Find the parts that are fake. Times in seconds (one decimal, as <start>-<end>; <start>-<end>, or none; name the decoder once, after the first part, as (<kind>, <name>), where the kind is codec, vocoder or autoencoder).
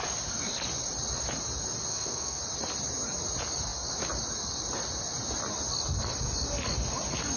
1.9-2.4 (codec, SNAC)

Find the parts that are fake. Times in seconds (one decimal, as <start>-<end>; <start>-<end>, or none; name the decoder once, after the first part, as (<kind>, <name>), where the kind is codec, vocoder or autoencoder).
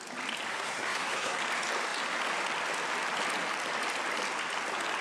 0.5-1.4 (codec, SNAC)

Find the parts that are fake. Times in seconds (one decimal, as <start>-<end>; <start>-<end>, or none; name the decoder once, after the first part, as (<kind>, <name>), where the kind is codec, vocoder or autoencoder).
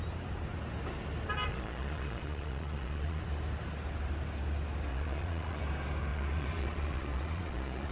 1.5-3.2 (vocoder, Vocos); 4.9-5.6; 6.1-7.9